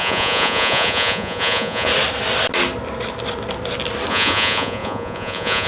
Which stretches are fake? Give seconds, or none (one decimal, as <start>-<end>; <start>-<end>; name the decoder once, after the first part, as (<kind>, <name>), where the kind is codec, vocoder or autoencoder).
0.0-1.9 (vocoder, Vocos); 4.1-5.7